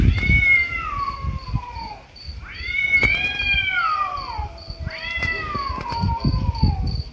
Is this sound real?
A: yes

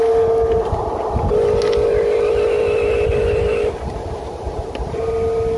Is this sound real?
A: yes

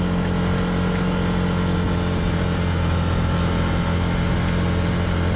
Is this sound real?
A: yes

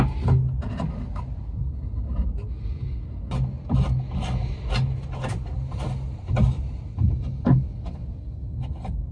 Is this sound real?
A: yes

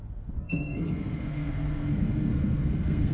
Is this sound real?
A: no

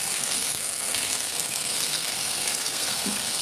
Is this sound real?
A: no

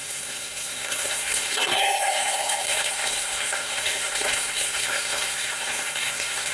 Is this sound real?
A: no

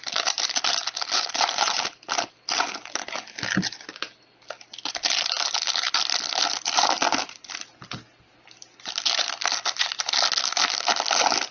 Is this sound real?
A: yes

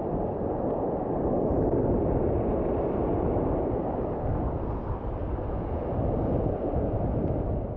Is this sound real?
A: yes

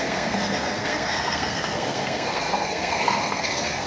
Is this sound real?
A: no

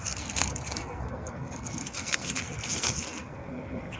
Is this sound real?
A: no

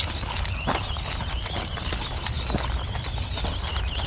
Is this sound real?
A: yes